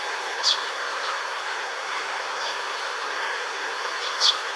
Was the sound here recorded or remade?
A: remade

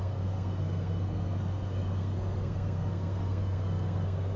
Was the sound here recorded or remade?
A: remade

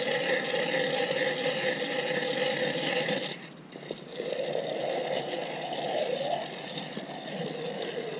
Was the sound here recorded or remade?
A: recorded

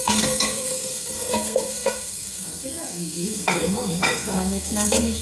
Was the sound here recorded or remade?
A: remade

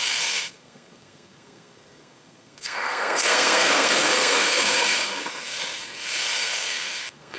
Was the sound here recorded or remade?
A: remade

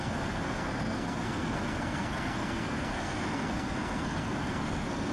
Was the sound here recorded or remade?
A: remade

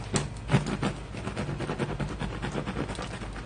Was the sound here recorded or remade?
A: recorded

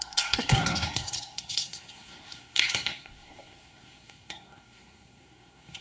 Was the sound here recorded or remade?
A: remade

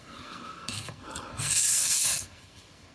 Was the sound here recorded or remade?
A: remade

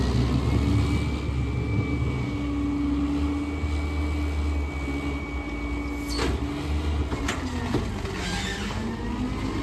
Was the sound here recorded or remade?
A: recorded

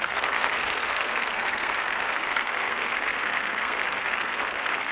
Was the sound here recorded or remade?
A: remade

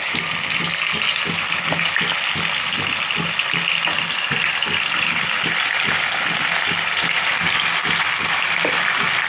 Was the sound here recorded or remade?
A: recorded